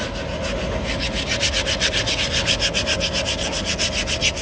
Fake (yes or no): no